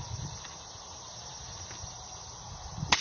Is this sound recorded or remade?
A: recorded